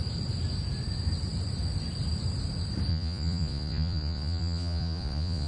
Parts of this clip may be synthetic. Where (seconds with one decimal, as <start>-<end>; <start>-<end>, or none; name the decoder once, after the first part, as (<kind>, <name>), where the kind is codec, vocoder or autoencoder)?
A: 2.9-5.5 (vocoder, Vocos)